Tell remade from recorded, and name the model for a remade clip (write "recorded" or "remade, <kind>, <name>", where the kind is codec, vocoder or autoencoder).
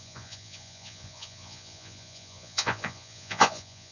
remade, vocoder, Vocos